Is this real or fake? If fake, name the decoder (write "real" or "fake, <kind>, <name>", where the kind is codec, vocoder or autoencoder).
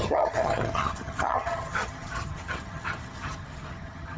fake, vocoder, HiFi-GAN